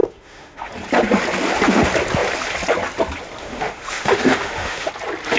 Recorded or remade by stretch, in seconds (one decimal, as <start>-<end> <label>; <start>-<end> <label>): 0.0-0.7 remade; 0.7-3.4 recorded; 3.4-4.9 remade; 4.9-5.4 recorded